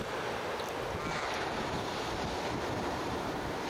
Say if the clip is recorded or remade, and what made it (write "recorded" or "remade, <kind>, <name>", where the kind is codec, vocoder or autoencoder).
recorded